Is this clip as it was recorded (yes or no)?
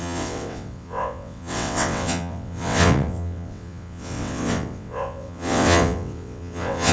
no